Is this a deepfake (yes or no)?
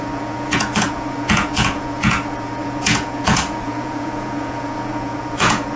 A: yes